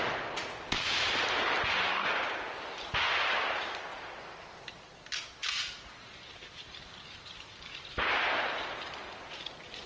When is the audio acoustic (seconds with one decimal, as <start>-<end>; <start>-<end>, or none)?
0.0-5.4; 8.3-9.9